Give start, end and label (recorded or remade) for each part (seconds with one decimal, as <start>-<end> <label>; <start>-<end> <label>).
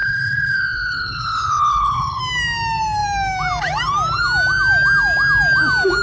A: 0.0-2.2 remade; 2.2-6.0 recorded